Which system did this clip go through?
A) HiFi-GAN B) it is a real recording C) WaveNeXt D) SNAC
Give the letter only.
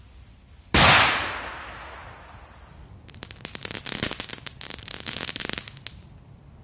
B